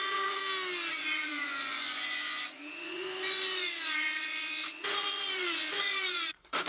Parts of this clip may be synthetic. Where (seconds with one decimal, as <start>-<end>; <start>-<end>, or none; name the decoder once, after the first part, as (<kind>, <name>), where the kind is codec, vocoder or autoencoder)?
0.0-0.4 (vocoder, Vocos); 0.9-6.7